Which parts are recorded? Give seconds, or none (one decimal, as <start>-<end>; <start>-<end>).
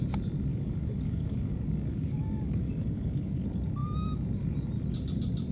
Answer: 0.0-0.5; 3.4-5.5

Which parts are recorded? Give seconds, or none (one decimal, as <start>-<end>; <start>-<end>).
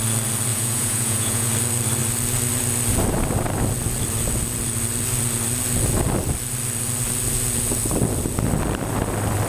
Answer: 0.0-0.5; 1.5-9.5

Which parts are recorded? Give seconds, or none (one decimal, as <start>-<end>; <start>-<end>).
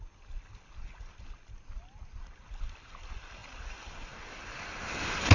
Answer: 0.0-5.3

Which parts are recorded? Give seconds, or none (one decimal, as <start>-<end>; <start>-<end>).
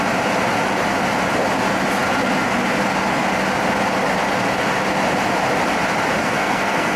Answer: 0.0-6.2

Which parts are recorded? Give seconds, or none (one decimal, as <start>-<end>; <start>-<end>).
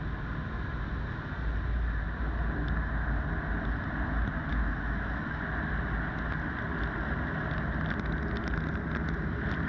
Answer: 0.0-4.5; 5.4-9.7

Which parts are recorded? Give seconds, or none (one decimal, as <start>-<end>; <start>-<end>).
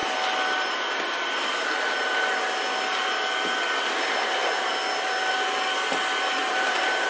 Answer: 0.0-6.4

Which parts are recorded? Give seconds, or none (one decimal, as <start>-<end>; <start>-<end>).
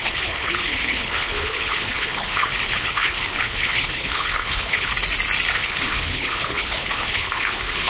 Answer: 4.9-5.5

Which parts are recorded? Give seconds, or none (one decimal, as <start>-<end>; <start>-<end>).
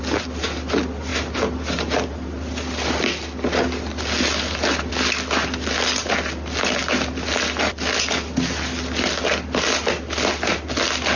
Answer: 0.0-11.2